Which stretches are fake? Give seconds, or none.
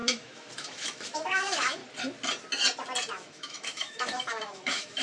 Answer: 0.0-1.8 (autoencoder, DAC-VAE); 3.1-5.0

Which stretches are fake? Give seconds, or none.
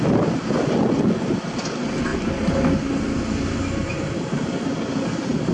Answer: none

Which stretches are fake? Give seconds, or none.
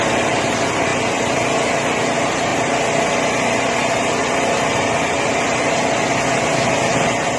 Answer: none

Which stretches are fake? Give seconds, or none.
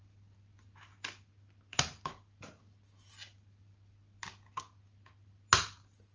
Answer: none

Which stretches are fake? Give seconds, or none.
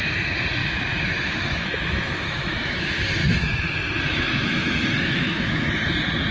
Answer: 0.6-2.8 (autoencoder, DAC-VAE); 3.2-5.7